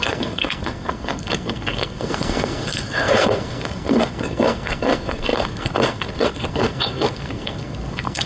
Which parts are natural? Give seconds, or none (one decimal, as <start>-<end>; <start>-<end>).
none